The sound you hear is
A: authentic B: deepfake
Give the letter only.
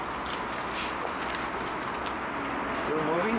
A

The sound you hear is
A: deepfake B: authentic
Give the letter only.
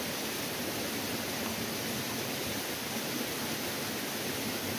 B